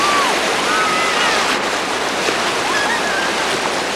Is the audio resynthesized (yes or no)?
no